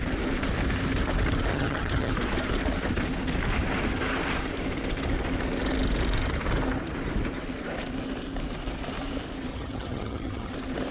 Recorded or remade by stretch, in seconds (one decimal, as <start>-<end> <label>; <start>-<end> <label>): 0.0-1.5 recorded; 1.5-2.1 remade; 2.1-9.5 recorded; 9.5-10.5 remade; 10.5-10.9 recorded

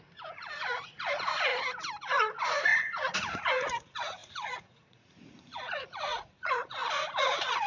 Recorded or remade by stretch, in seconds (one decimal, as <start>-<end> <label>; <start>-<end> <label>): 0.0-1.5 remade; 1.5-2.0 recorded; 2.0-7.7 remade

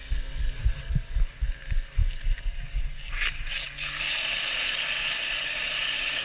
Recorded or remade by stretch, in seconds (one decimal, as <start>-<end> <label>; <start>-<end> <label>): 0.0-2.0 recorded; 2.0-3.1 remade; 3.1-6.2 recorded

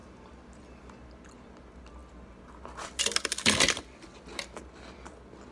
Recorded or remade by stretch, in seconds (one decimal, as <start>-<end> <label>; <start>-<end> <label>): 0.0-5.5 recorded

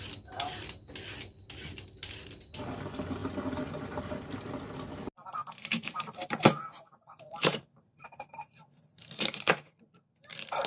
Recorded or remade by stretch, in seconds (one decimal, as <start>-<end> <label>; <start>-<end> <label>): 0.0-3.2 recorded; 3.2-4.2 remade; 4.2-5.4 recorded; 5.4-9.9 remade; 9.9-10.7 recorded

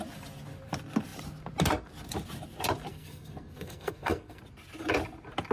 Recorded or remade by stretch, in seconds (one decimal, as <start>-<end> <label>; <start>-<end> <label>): 0.0-2.9 recorded; 2.9-4.4 remade; 4.4-5.5 recorded

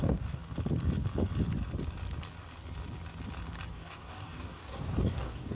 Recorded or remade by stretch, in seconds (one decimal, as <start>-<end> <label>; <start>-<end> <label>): 0.0-0.4 remade; 0.4-3.7 recorded; 3.7-5.5 remade

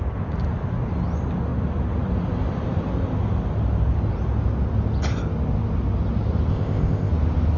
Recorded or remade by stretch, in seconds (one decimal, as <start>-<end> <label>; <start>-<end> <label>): 0.0-6.5 recorded; 6.5-7.1 remade; 7.1-7.6 recorded